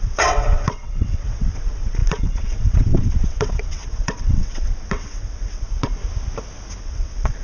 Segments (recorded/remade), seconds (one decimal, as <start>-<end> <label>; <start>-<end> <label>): 0.0-6.0 remade; 6.0-6.8 recorded; 6.8-7.4 remade